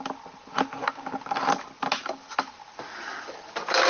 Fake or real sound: real